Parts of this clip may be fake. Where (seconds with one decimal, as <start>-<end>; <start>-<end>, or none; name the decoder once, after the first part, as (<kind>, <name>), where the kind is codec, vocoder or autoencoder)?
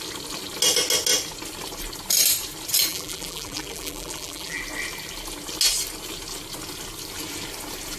2.9-4.6 (vocoder, BigVGAN v2)